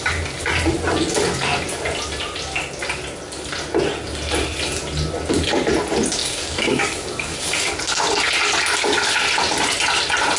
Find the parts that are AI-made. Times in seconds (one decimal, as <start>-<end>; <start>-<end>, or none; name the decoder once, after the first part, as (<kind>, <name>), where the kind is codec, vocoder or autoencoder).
6.2-7.8 (codec, DAC)